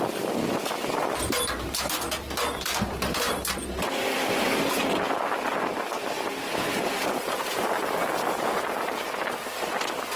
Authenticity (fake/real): real